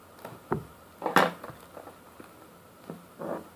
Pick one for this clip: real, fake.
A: real